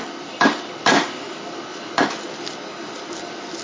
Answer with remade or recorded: remade